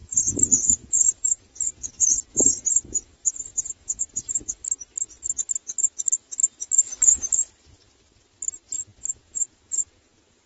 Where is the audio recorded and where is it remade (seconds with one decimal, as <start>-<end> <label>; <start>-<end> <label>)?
0.0-4.6 remade; 4.6-9.1 recorded; 9.1-10.5 remade